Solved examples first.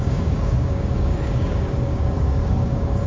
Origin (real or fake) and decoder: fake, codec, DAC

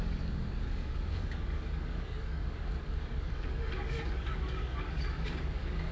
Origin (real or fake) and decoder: fake, codec, DAC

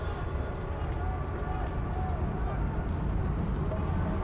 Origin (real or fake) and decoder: real